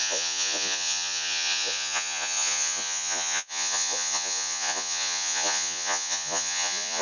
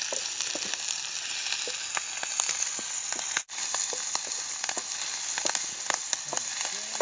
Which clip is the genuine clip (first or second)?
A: second